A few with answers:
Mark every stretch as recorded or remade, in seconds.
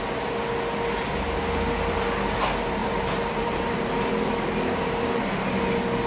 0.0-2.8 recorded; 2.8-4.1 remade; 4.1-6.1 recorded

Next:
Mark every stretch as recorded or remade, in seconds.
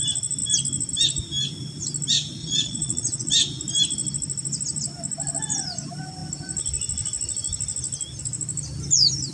0.0-2.4 recorded; 2.4-3.3 remade; 3.3-9.3 recorded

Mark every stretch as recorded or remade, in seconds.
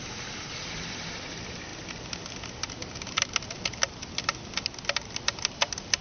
0.0-1.7 remade; 1.7-5.0 recorded; 5.0-6.0 remade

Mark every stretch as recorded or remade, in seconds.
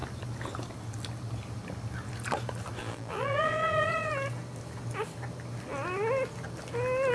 0.0-2.8 recorded; 2.8-4.1 remade; 4.1-7.1 recorded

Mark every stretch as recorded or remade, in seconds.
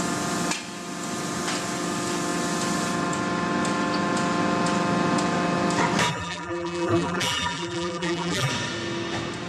0.0-6.1 recorded; 6.1-8.5 remade; 8.5-9.5 recorded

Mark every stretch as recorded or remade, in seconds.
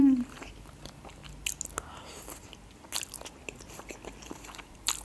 0.0-1.2 remade; 1.2-4.2 recorded; 4.2-5.0 remade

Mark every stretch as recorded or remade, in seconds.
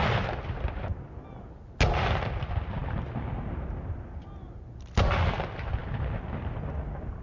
0.0-7.2 recorded